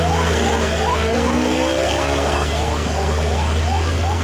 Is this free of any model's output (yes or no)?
no